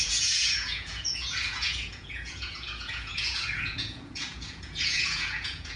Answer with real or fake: fake